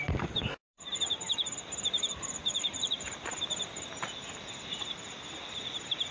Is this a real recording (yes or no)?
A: no